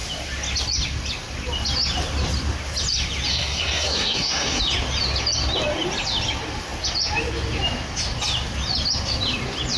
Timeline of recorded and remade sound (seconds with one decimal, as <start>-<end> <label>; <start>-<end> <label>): 0.0-3.3 recorded; 3.3-4.6 remade; 4.6-9.8 recorded